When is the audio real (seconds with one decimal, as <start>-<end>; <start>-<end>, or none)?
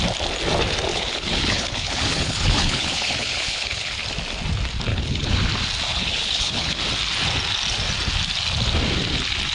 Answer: 0.0-0.9; 4.0-4.9; 5.4-5.9; 6.8-9.5